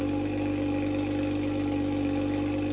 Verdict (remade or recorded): recorded